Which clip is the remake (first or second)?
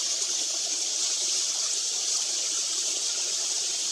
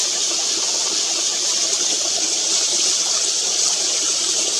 first